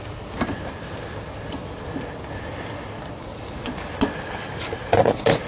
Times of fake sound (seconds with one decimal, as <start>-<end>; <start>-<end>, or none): none